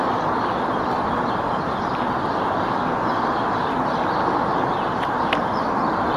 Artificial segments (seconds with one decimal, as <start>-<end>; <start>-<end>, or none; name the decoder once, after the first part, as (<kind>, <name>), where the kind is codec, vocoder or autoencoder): none